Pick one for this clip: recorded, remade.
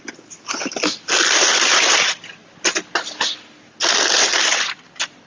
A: recorded